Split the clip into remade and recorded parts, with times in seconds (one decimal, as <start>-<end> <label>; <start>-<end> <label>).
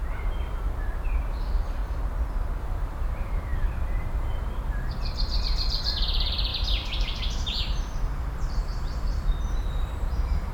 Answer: 0.0-1.3 recorded; 1.3-1.8 remade; 1.8-2.6 recorded; 2.6-10.5 remade